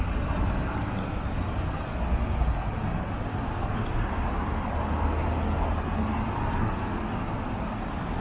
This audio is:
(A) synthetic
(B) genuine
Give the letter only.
B